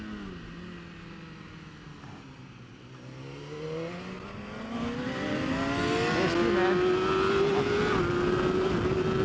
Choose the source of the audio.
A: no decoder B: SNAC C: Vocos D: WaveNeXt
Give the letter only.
A